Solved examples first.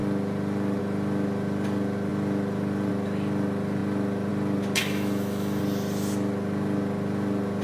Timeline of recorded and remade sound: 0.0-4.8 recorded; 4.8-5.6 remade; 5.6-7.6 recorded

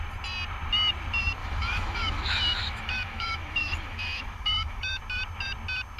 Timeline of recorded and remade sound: 0.0-1.4 recorded; 1.4-5.0 remade; 5.0-6.0 recorded

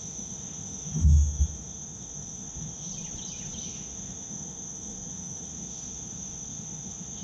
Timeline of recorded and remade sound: 0.0-2.9 remade; 2.9-3.6 recorded; 3.6-7.2 remade